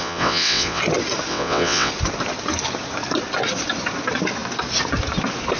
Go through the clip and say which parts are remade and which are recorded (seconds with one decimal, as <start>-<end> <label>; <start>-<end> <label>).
0.0-0.8 remade; 0.8-1.3 recorded; 1.3-1.9 remade; 1.9-5.6 recorded

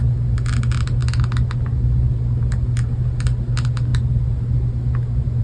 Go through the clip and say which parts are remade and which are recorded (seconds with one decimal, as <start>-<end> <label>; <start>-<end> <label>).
0.0-5.4 recorded

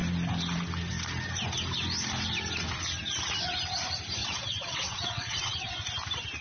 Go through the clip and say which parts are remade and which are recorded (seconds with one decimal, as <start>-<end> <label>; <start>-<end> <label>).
0.0-4.2 recorded; 4.2-5.7 remade; 5.7-6.4 recorded

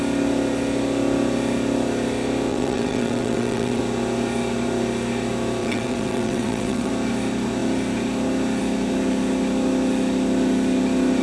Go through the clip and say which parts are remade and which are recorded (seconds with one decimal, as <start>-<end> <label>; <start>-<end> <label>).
0.0-2.5 recorded; 2.5-3.8 remade; 3.8-5.6 recorded; 5.6-6.9 remade; 6.9-11.2 recorded